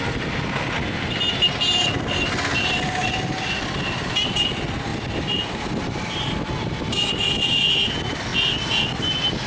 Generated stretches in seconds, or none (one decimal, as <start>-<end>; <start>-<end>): none

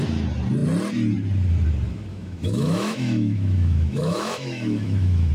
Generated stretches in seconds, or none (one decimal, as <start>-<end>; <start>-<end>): 2.1-5.3

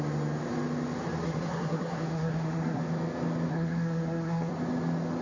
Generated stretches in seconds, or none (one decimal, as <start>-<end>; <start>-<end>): 1.2-2.8; 3.5-4.5